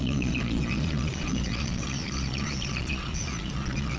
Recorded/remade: remade